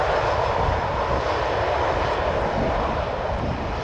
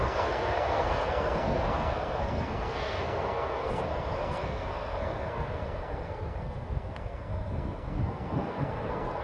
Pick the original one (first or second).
first